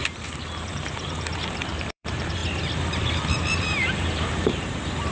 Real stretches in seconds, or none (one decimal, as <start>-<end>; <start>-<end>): 2.4-3.6